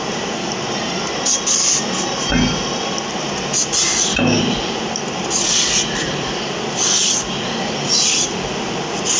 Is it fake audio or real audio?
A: real